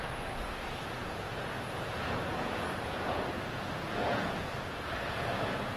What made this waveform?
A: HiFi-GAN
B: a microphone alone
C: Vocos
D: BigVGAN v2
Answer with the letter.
C